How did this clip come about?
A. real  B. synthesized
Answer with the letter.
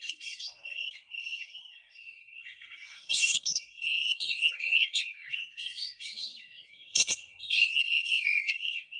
B